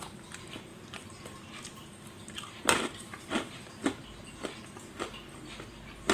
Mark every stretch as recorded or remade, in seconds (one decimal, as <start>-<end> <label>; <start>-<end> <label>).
0.0-0.7 recorded; 0.7-3.8 remade; 3.8-6.1 recorded